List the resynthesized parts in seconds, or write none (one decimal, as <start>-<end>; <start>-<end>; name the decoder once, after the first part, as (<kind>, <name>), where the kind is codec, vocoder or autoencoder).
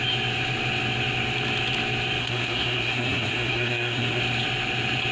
2.2-4.2 (codec, SNAC)